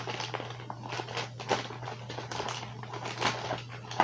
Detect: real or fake real